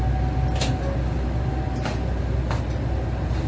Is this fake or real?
real